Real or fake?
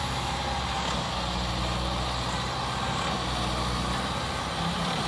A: real